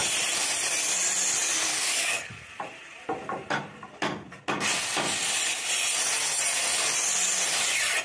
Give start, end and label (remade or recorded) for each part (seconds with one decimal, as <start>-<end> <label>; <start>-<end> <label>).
0.0-1.7 recorded; 1.7-2.3 remade; 2.3-8.0 recorded